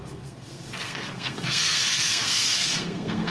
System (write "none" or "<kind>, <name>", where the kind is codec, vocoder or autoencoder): codec, SNAC